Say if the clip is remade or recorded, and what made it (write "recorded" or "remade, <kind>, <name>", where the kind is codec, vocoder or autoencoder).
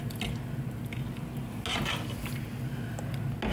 recorded